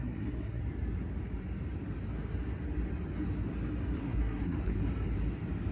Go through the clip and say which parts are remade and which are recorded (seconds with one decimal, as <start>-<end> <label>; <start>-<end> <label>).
0.0-0.6 remade; 0.6-4.0 recorded; 4.0-4.8 remade; 4.8-5.7 recorded